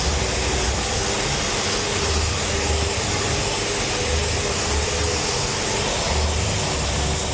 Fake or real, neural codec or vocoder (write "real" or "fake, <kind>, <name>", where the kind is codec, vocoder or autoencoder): real